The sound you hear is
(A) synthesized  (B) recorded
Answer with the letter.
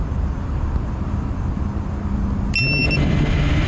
B